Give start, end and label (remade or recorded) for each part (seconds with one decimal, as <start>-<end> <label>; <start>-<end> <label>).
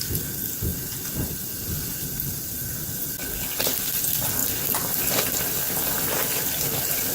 0.0-0.7 recorded; 0.7-1.4 remade; 1.4-4.4 recorded; 4.4-5.1 remade; 5.1-7.1 recorded